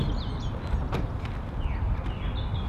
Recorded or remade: recorded